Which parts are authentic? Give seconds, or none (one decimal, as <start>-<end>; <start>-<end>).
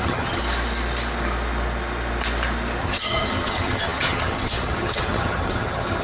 0.4-2.8